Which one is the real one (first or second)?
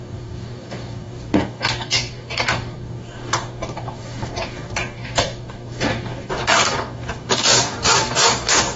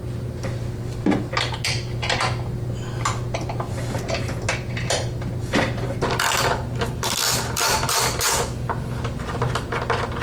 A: second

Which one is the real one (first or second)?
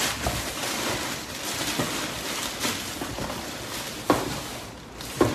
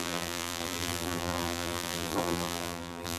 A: first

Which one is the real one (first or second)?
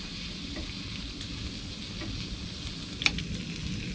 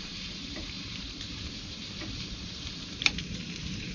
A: first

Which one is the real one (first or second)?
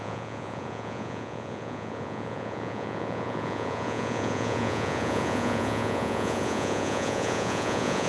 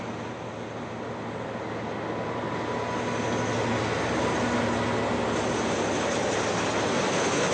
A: second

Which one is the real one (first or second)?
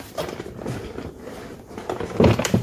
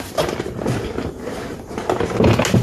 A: second